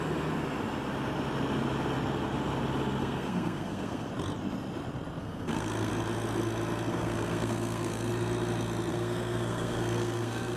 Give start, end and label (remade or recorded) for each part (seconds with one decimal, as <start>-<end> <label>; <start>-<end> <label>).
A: 0.0-3.0 recorded; 3.0-4.1 remade; 4.1-5.2 recorded; 5.2-5.9 remade; 5.9-6.9 recorded; 6.9-8.1 remade; 8.1-8.9 recorded; 8.9-10.6 remade